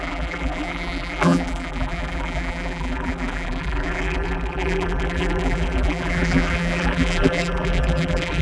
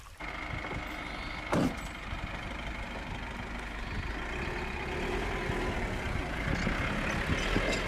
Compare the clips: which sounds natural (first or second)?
second